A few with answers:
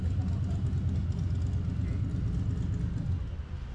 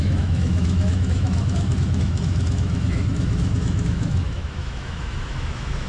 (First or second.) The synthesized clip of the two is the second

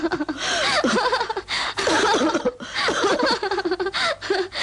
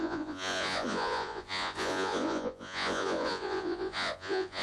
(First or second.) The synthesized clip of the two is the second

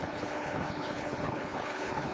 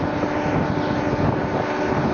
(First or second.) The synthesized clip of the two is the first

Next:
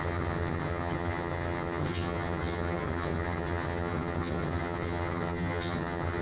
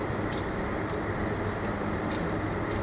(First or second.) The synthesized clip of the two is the first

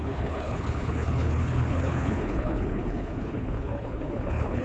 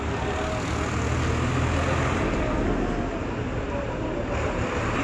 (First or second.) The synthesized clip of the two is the first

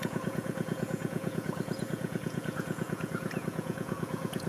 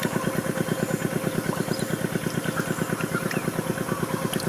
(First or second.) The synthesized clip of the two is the first